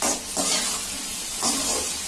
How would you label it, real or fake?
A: real